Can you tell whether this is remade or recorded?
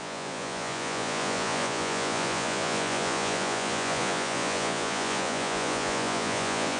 remade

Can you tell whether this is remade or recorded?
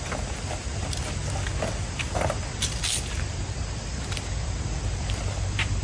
recorded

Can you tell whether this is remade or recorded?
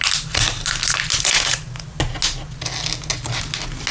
recorded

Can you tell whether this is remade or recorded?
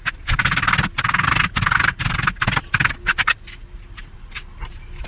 recorded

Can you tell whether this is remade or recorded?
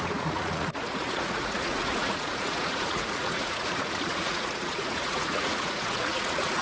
remade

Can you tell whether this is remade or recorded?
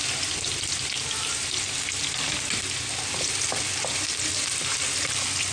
recorded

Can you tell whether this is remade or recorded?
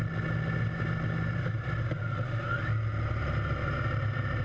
recorded